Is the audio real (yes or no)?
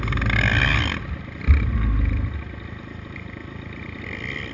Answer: yes